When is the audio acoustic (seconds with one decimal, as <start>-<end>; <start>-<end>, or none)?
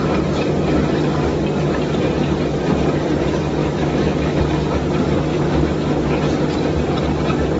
0.0-3.6; 4.4-5.3; 6.1-7.6